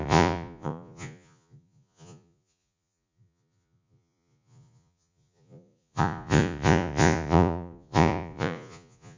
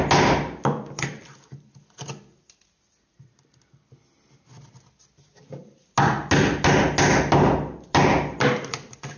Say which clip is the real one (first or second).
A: second